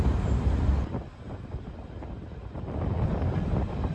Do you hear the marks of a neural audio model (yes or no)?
no